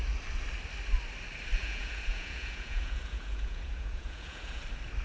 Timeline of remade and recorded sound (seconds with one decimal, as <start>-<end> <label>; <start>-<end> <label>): 0.0-1.6 recorded; 1.6-4.6 remade; 4.6-5.0 recorded